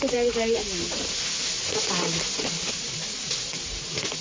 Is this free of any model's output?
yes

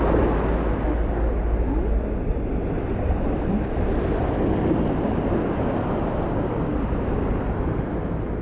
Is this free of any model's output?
yes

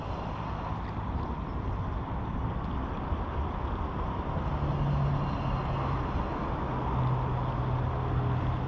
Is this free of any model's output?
yes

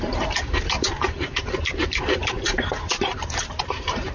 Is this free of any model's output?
no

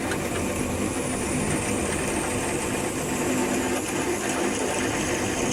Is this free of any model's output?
yes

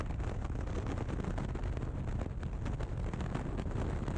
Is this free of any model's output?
yes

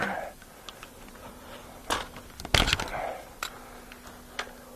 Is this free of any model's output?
yes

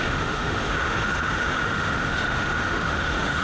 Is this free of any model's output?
no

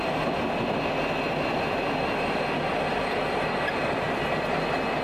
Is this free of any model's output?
yes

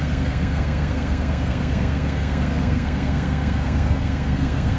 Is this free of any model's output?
no